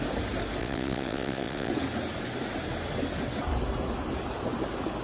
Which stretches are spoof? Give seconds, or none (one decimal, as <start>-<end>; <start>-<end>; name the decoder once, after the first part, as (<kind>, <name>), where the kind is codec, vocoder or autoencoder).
0.6-1.7 (vocoder, WaveNeXt)